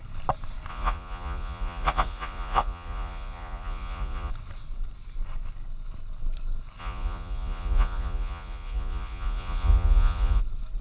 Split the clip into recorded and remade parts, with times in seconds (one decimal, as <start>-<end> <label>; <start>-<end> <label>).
0.0-0.7 recorded; 0.7-4.3 remade; 4.3-6.8 recorded; 6.8-10.4 remade; 10.4-10.8 recorded